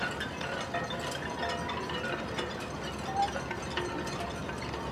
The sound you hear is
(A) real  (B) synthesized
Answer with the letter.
A